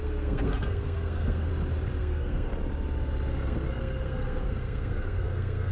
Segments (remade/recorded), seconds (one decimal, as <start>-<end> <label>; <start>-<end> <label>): 0.0-1.5 remade; 1.5-2.0 recorded; 2.0-2.5 remade; 2.5-3.3 recorded; 3.3-5.7 remade